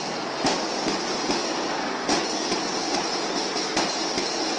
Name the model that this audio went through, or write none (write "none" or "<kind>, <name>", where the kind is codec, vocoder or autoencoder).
none